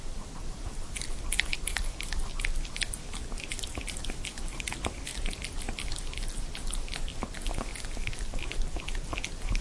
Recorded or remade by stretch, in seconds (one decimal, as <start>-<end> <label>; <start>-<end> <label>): 0.0-1.7 remade; 1.7-2.7 recorded; 2.7-7.7 remade; 7.7-9.6 recorded